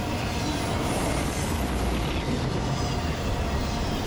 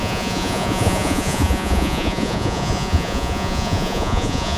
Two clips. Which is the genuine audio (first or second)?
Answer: first